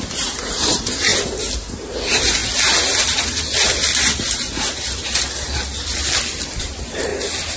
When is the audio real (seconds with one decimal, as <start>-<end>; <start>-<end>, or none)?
1.1-1.7; 2.4-6.6; 7.1-7.6